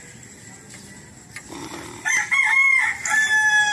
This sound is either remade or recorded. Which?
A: recorded